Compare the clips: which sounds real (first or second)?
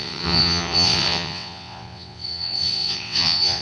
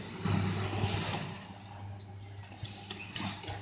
second